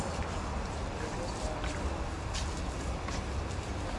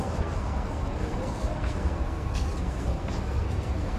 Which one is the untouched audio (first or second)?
first